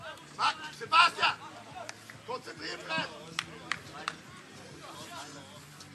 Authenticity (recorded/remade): recorded